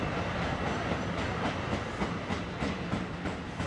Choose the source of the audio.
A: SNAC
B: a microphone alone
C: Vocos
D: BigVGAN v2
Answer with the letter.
B